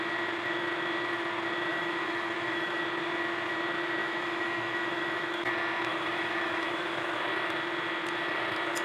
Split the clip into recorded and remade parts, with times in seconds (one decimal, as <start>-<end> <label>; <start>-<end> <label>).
0.0-1.7 recorded; 1.7-2.8 remade; 2.8-4.0 recorded; 4.0-5.5 remade; 5.5-5.9 recorded; 5.9-7.2 remade; 7.2-8.8 recorded